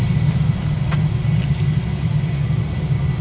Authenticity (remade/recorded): recorded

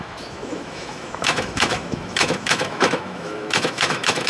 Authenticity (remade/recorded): remade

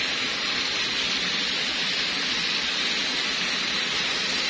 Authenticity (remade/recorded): recorded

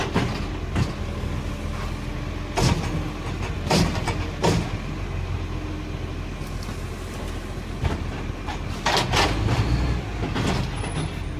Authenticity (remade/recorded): recorded